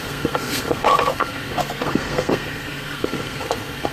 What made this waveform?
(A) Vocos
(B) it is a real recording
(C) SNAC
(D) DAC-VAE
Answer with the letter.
C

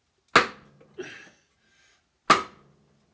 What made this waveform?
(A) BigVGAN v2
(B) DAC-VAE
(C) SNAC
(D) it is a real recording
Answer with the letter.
D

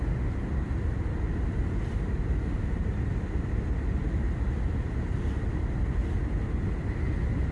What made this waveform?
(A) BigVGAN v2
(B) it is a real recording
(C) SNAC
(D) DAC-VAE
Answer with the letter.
B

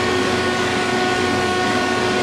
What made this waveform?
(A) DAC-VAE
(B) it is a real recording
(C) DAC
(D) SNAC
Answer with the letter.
C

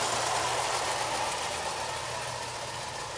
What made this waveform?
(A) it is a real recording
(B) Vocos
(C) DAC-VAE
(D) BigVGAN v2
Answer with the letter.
A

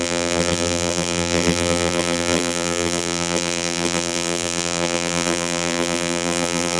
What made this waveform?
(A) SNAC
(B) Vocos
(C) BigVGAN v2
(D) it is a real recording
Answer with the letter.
C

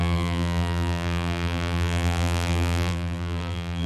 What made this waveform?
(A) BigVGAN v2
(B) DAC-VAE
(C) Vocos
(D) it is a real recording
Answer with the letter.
A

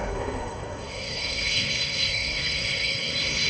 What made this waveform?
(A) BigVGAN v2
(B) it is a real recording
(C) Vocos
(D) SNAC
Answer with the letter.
D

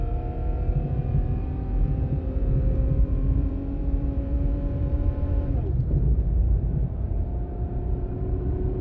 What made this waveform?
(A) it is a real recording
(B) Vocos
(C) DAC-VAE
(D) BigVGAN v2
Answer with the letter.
D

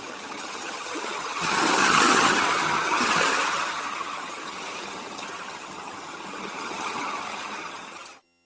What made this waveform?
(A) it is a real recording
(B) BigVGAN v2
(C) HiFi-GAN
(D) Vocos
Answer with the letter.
C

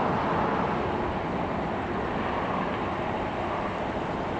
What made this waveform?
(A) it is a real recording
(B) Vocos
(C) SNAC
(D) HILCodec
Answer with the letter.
A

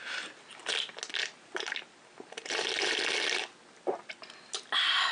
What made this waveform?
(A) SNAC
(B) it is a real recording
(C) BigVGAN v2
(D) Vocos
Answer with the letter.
B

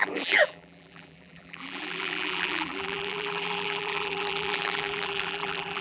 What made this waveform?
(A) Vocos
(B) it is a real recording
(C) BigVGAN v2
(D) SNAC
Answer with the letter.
C